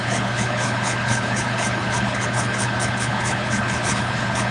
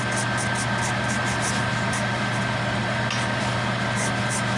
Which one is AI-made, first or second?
first